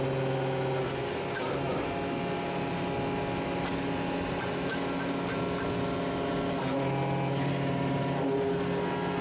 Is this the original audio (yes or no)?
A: yes